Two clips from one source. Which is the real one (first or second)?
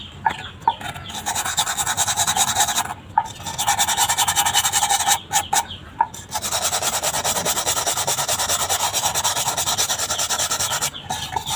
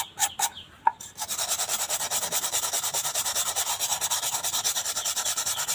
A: first